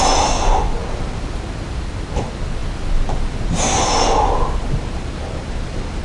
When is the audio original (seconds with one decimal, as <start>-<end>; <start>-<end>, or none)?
0.0-0.8; 1.4-2.6